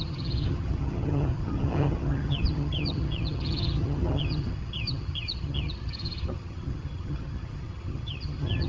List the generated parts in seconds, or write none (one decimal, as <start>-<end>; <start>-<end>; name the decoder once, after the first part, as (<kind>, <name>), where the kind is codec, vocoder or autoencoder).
0.0-8.7 (vocoder, HiFi-GAN)